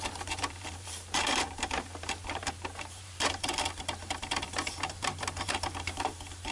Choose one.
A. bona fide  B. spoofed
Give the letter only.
B